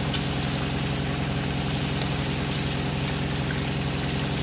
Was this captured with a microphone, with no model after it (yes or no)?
yes